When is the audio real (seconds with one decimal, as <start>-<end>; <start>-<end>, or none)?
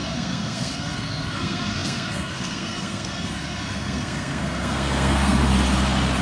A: 5.4-6.2